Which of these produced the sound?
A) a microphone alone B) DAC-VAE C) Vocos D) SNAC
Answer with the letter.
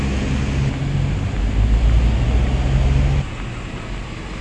A